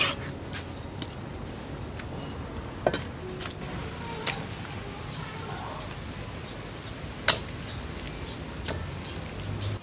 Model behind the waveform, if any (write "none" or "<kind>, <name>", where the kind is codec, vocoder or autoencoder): none